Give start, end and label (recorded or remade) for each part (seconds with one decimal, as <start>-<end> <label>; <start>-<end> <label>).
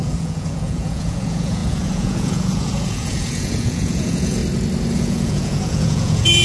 0.0-4.4 remade; 4.4-4.9 recorded; 4.9-6.4 remade